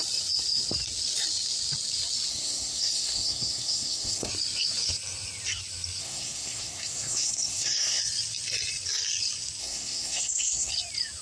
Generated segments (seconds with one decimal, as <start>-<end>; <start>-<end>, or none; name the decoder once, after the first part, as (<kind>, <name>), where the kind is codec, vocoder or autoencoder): 2.3-4.3 (codec, SNAC); 6.0-8.0; 9.6-10.7